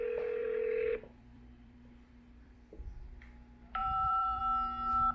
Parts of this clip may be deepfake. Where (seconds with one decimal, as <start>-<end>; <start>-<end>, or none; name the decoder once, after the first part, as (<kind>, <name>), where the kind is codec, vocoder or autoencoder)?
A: 0.4-3.2 (vocoder, BigVGAN v2); 3.8-4.4